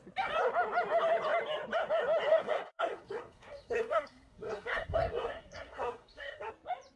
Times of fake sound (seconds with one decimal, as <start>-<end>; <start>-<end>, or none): 2.3-6.5

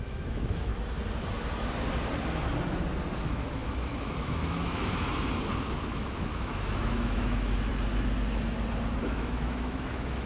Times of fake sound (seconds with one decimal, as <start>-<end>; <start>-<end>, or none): 0.0-0.7; 3.2-5.1; 5.6-7.7; 9.0-10.2

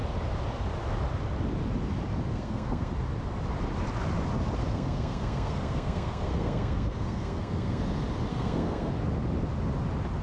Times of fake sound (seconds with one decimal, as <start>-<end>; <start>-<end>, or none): 2.3-2.9; 4.7-7.8; 8.3-8.9

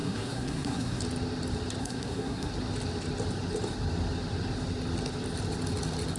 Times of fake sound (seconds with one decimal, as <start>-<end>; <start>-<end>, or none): 0.0-1.0; 1.8-2.5

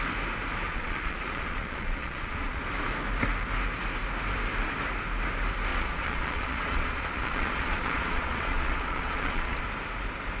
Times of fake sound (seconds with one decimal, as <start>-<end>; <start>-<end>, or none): 0.7-2.6; 5.7-9.6

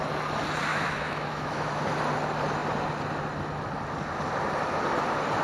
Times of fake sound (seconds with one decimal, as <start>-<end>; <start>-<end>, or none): 0.7-1.8

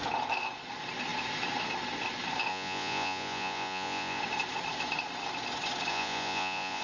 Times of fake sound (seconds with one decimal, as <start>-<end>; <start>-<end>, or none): 2.5-4.2; 5.9-6.8

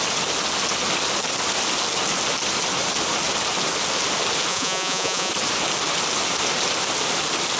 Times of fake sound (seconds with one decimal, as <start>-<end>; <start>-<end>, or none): 4.5-5.3